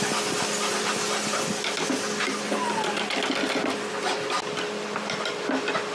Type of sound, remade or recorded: recorded